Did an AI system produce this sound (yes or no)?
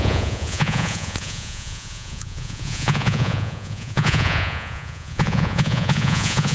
yes